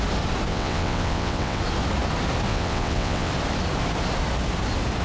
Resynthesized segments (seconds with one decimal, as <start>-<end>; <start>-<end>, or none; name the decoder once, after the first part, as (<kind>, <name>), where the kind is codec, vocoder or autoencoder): 0.5-1.6 (vocoder, WaveNeXt); 2.5-3.3